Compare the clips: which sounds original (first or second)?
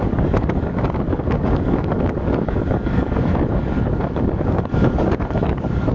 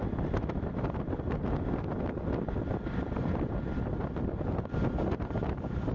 second